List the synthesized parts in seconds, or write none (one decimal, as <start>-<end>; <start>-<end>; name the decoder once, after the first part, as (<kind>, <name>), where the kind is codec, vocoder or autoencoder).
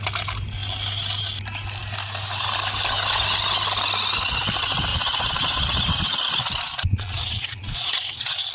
4.9-8.5 (vocoder, Vocos)